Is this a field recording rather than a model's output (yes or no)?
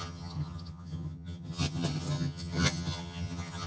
no